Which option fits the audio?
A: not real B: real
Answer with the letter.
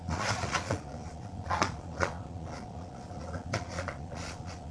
A